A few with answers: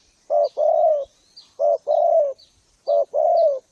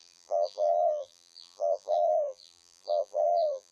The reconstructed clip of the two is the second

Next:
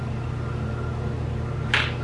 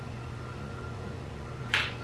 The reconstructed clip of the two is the second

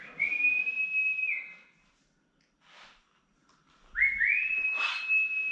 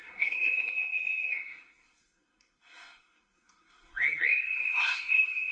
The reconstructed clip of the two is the second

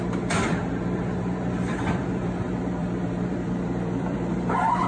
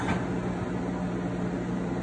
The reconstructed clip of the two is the first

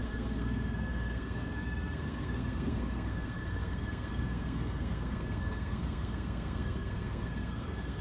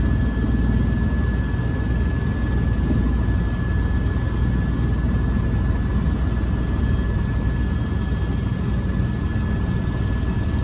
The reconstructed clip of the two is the first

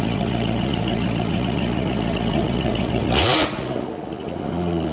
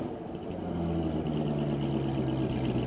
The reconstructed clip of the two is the first